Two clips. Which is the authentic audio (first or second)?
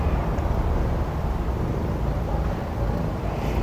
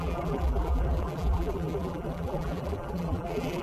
first